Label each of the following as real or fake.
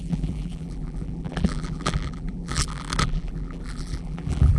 fake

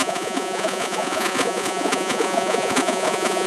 fake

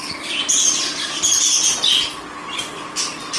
real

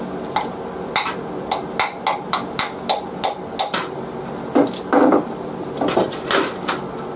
real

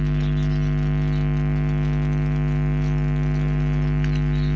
real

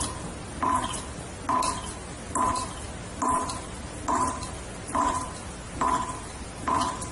real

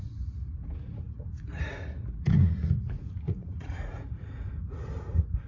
fake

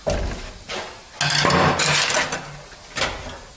real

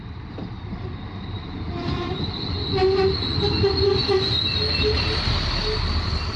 real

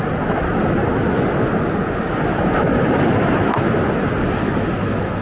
real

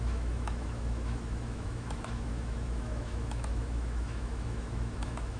fake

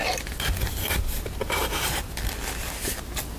real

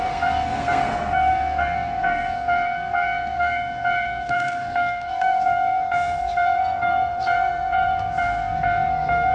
fake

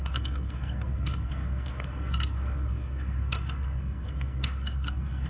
fake